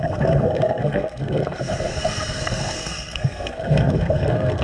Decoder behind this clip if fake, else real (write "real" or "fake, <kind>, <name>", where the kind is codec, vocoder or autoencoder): fake, codec, SNAC